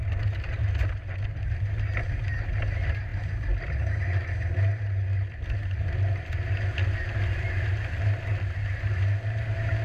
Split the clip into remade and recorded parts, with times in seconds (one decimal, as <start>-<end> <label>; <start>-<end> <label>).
0.0-6.8 recorded; 6.8-7.7 remade; 7.7-9.8 recorded